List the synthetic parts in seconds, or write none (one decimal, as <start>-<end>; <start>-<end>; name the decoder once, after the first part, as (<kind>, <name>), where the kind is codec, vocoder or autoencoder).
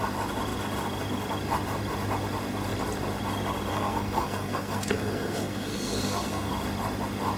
3.7-6.5 (codec, SNAC)